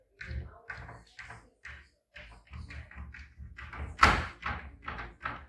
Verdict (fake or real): real